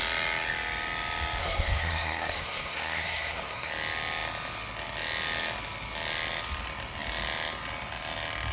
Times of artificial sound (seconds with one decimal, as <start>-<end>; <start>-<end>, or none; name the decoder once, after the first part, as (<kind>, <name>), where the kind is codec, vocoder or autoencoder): 1.4-3.7 (codec, SNAC)

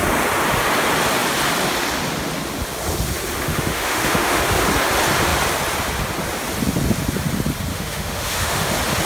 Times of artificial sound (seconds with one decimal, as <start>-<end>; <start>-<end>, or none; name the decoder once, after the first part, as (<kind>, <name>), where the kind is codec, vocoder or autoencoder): 3.5-4.4 (autoencoder, DAC-VAE); 7.7-8.7

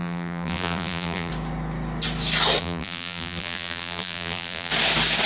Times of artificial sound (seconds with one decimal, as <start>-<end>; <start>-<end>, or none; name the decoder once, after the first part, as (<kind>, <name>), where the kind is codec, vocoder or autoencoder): 0.0-1.3 (vocoder, BigVGAN v2); 2.6-4.7

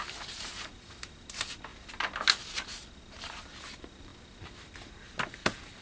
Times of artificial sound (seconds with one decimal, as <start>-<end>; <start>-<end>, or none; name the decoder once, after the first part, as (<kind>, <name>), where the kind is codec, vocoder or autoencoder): none

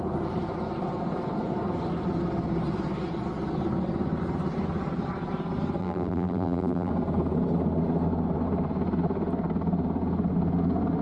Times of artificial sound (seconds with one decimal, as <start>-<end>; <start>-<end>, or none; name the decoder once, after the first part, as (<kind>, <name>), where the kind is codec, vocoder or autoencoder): 5.8-6.9 (vocoder, BigVGAN v2)

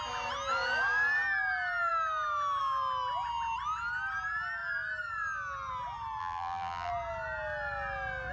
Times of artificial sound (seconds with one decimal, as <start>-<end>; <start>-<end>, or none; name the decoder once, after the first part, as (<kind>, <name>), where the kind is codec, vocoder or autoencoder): 6.2-6.9 (vocoder, BigVGAN v2)

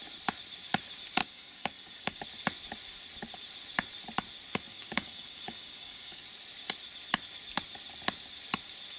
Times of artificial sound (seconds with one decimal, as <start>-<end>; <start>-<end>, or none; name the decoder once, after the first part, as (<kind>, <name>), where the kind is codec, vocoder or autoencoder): 1.2-2.2 (codec, DAC); 4.7-6.2